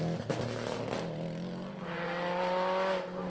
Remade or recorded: recorded